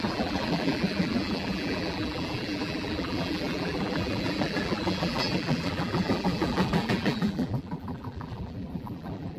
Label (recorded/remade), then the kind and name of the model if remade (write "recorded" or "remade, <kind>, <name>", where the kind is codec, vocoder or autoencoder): remade, vocoder, BigVGAN v2